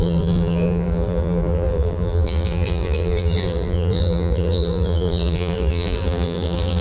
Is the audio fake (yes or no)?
yes